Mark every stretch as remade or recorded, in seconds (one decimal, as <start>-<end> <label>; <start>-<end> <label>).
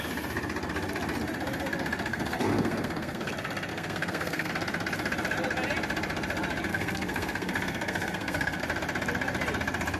0.0-2.1 recorded; 2.1-3.3 remade; 3.3-3.7 recorded; 3.7-4.5 remade; 4.5-6.7 recorded; 6.7-8.6 remade; 8.6-10.0 recorded